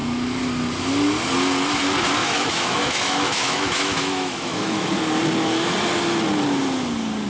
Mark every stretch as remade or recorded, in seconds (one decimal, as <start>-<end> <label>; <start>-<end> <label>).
0.0-2.2 recorded; 2.2-4.9 remade; 4.9-7.3 recorded